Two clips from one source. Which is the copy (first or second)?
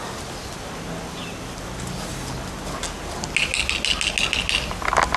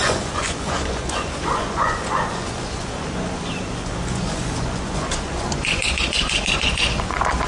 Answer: second